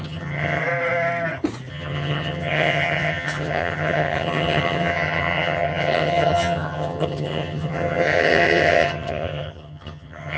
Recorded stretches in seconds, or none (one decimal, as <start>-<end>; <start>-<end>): 0.6-1.7